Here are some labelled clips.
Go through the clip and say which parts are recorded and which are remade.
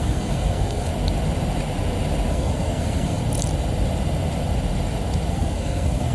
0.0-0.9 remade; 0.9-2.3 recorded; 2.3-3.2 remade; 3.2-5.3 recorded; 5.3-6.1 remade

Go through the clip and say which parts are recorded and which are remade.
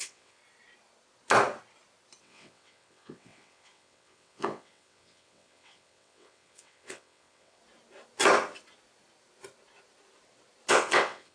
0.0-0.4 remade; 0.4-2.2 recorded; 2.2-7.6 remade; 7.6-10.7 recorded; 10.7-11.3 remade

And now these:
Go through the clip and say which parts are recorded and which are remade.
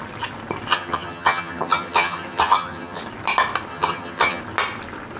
0.0-0.7 recorded; 0.7-3.0 remade; 3.0-3.7 recorded; 3.7-4.4 remade; 4.4-5.2 recorded